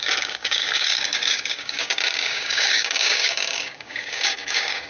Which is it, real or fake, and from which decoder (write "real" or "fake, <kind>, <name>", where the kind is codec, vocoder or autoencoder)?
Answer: fake, codec, DAC